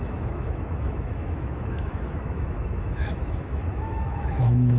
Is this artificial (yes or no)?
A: yes